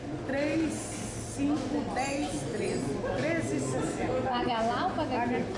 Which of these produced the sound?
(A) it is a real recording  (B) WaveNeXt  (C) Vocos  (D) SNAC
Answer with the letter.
A